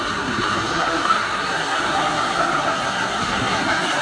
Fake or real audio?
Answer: fake